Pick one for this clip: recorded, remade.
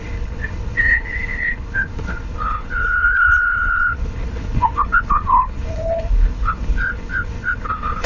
remade